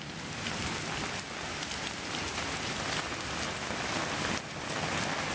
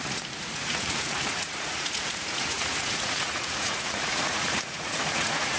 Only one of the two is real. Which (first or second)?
first